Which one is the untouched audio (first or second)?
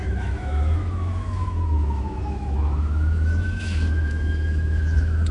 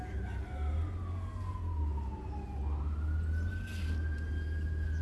second